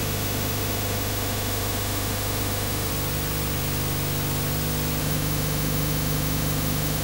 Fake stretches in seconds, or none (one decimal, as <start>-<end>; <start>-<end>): 0.0-2.9; 5.0-7.0